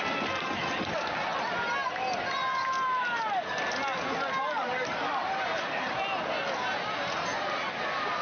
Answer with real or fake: real